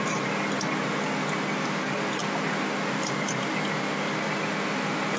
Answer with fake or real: real